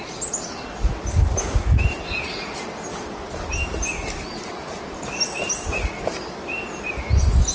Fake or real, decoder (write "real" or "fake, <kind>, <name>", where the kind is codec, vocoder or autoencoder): real